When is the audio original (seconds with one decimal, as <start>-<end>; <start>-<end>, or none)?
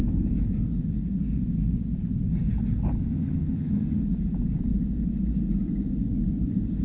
0.0-3.0; 4.0-6.8